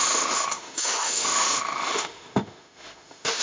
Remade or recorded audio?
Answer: remade